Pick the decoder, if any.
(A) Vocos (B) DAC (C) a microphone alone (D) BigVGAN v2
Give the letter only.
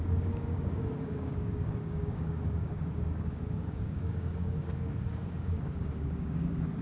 B